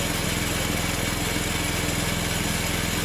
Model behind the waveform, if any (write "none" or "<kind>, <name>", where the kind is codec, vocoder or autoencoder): none